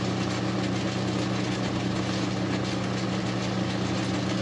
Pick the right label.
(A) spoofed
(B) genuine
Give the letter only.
B